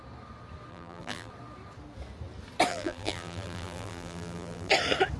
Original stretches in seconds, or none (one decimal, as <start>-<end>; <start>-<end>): 0.0-0.7; 1.3-2.7; 4.7-5.2